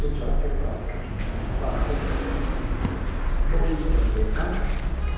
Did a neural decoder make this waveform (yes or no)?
no